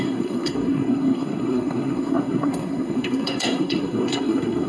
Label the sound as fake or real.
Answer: fake